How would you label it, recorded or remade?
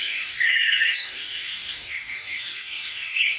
remade